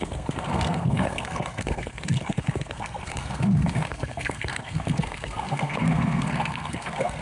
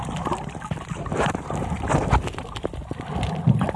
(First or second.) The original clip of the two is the second